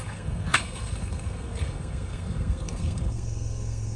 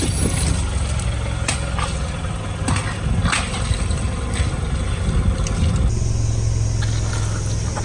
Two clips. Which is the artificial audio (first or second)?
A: first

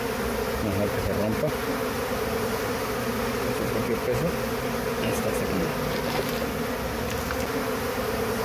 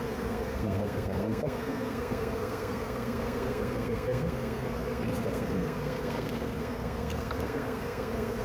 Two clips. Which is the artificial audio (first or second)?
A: second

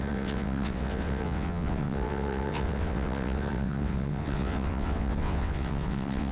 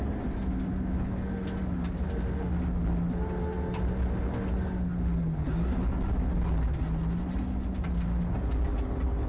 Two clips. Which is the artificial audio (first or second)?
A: first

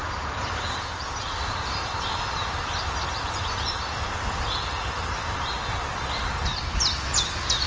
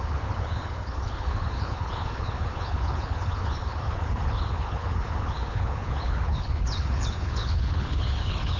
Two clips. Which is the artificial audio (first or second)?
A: second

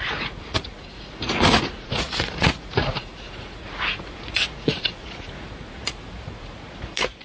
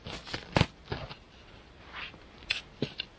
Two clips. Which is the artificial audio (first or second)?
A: first